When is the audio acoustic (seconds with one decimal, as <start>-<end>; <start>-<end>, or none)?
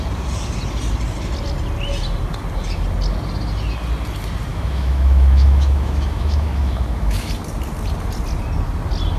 0.0-4.5; 7.3-9.2